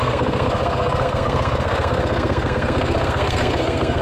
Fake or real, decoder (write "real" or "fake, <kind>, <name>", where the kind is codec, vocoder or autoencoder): fake, codec, SNAC